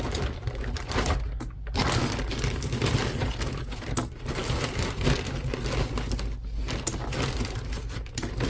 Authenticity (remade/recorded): recorded